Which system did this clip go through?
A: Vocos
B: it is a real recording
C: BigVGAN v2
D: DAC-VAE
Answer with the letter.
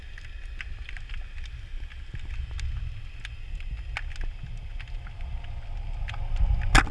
B